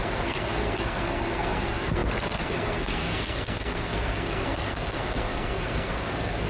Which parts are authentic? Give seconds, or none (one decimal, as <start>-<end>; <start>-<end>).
none